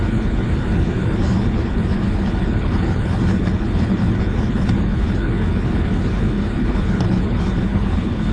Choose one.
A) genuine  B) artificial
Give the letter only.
B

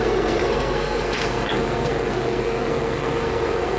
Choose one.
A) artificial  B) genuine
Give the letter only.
A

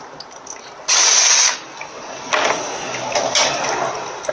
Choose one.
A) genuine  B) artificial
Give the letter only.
A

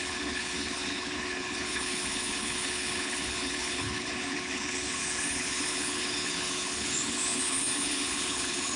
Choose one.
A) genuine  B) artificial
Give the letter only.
B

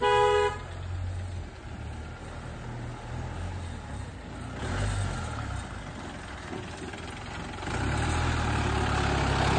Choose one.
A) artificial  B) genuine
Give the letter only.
B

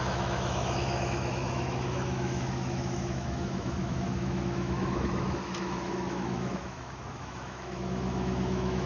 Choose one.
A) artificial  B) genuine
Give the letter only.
A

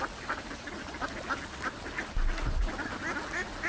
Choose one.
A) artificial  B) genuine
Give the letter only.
B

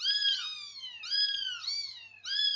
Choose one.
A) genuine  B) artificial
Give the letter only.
A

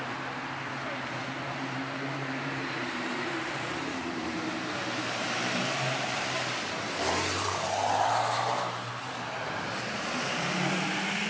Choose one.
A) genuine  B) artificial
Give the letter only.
B